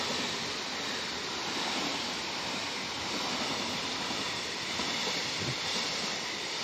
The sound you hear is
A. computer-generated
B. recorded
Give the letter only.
A